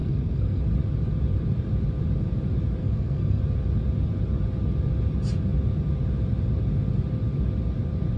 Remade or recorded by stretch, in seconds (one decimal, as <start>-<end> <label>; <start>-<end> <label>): 0.0-0.6 remade; 0.6-2.8 recorded; 2.8-3.4 remade; 3.4-8.2 recorded

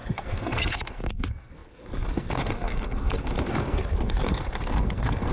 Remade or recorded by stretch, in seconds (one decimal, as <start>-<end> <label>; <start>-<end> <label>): 0.0-5.3 remade

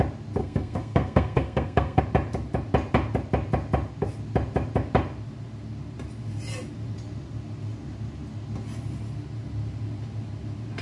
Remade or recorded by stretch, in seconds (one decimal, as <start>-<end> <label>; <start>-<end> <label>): 0.0-0.4 recorded; 0.4-2.0 remade; 2.0-10.8 recorded

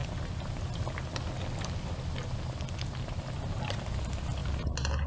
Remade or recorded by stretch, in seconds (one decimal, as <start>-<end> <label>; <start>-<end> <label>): 0.0-5.1 recorded

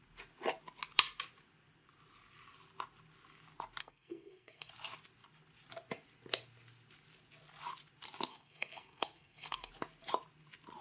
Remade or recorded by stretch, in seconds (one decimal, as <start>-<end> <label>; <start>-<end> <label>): 0.0-3.8 recorded; 3.8-4.7 remade; 4.7-8.3 recorded; 8.3-9.7 remade; 9.7-10.8 recorded

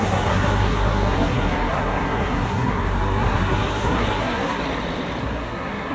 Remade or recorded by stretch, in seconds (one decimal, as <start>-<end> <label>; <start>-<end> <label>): 0.0-4.6 remade; 4.6-5.2 recorded; 5.2-5.9 remade

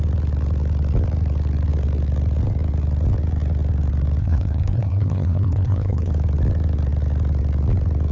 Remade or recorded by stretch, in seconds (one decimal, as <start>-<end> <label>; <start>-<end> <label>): 0.0-4.2 recorded; 4.2-6.1 remade; 6.1-8.1 recorded

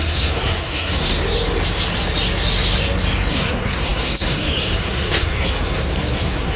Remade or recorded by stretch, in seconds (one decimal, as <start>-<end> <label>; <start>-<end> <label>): 0.0-1.2 remade; 1.2-3.3 recorded; 3.3-6.6 remade